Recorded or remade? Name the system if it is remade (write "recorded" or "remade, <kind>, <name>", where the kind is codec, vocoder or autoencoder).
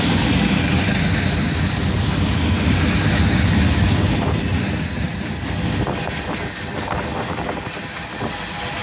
recorded